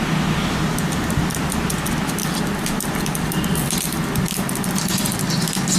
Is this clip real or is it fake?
real